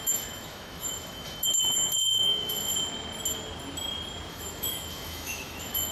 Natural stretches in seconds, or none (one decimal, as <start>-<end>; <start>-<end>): 2.7-4.3